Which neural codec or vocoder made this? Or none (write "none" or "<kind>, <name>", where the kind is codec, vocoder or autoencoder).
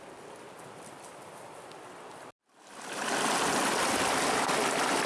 none